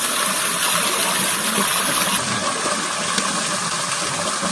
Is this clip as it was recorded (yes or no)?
yes